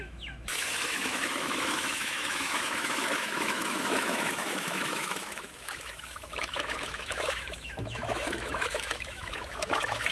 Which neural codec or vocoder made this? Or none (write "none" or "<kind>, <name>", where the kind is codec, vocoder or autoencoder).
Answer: autoencoder, DAC-VAE